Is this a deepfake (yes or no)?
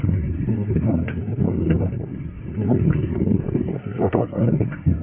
yes